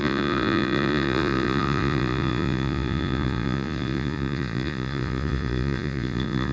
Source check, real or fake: fake